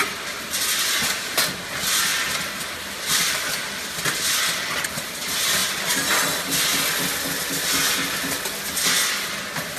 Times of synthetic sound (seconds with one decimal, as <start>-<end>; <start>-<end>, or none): none